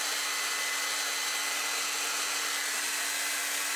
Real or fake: real